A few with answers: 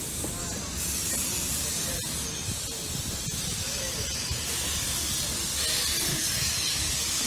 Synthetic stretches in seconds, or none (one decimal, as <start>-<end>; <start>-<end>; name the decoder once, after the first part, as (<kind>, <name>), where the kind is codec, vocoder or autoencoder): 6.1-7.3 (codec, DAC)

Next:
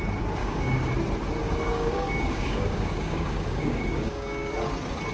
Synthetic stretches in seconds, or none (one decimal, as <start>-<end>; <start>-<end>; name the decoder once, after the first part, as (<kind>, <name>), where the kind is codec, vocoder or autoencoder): 0.4-0.9 (codec, DAC); 1.4-4.5

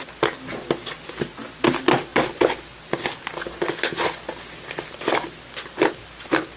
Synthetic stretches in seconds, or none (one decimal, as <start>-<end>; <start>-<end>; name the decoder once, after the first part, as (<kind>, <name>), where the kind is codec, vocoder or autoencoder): none